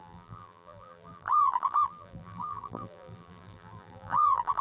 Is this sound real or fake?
fake